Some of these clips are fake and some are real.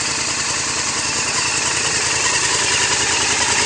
real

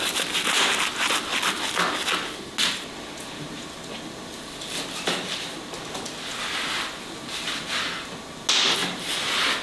real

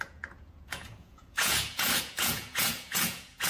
fake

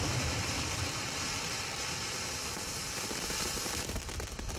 real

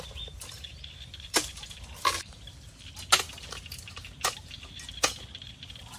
real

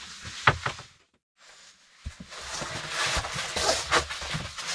real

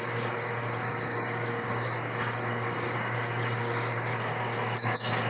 fake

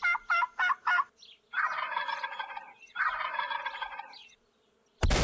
real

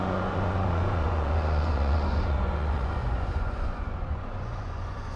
fake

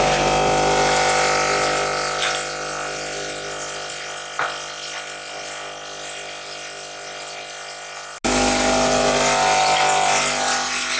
real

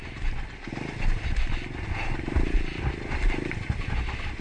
real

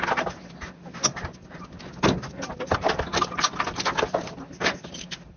real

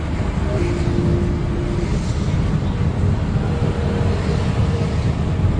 real